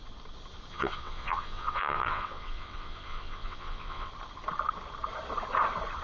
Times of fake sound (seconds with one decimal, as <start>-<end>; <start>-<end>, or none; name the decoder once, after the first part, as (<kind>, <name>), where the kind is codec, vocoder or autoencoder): 0.7-4.1 (vocoder, WaveNeXt)